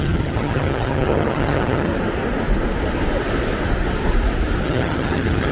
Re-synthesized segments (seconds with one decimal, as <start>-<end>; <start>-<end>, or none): 0.0-1.9; 4.6-5.5